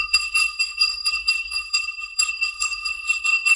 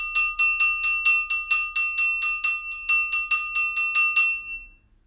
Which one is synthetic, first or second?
first